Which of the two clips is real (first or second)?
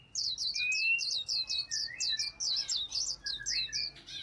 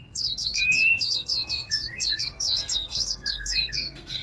first